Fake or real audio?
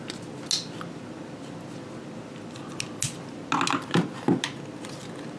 real